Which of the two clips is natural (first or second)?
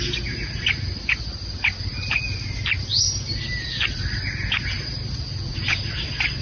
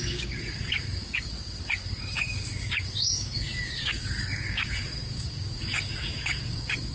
first